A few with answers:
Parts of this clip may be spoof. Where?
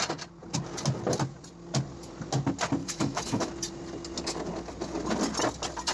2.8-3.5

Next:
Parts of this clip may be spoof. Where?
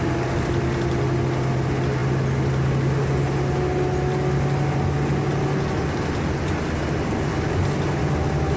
none